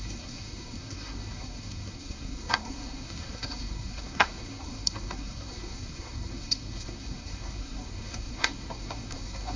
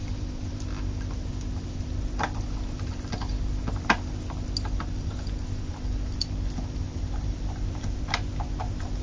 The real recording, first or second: second